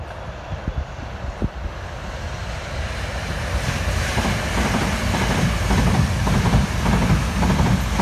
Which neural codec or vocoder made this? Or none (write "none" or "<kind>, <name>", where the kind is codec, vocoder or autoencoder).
none